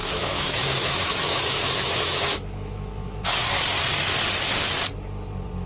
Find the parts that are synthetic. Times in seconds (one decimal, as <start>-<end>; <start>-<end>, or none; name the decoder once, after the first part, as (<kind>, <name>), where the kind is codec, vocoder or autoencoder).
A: 0.0-3.4 (autoencoder, DAC-VAE)